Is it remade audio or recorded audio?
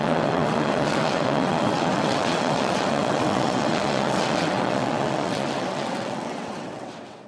remade